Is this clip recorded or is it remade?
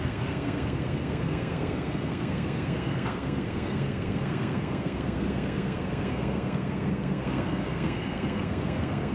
remade